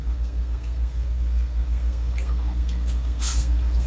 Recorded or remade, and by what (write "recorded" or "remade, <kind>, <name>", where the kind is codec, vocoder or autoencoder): remade, codec, SNAC